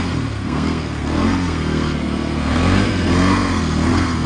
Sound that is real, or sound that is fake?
fake